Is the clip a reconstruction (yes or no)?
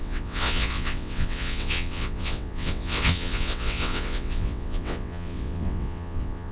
yes